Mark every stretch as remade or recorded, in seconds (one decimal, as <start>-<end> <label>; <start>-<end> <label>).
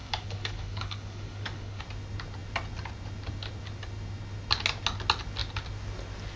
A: 0.0-1.8 remade; 1.8-6.4 recorded